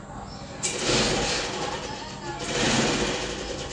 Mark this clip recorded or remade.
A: recorded